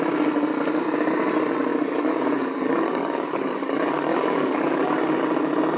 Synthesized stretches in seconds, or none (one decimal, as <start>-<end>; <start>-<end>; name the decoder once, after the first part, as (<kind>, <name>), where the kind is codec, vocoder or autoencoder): 1.7-5.2 (codec, DAC)